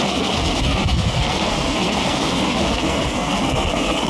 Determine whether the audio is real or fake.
fake